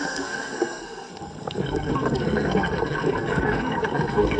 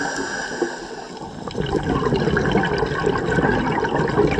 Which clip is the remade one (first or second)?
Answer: first